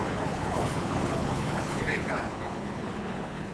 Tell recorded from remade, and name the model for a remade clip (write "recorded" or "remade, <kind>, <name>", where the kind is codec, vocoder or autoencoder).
remade, codec, HILCodec